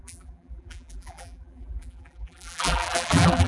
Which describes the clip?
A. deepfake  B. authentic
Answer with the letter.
A